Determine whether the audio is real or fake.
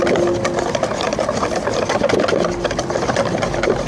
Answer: real